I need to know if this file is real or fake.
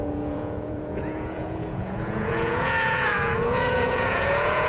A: fake